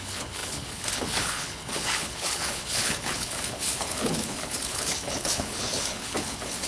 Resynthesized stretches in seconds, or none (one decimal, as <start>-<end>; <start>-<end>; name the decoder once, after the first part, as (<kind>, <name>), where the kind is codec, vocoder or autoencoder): 0.0-6.7 (codec, HILCodec)